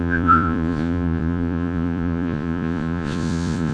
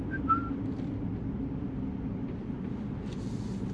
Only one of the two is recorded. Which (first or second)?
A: second